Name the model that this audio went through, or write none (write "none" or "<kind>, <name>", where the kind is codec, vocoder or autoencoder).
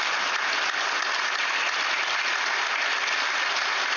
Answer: vocoder, BigVGAN v2